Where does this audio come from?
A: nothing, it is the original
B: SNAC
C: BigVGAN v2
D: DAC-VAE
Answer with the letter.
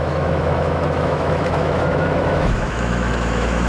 D